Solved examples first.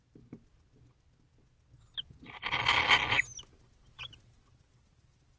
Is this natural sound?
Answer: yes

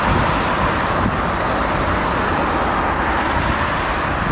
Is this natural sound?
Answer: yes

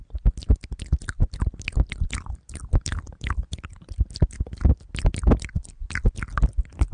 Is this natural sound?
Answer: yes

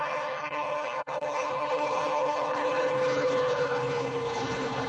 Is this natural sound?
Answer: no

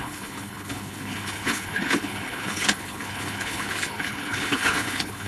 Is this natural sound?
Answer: no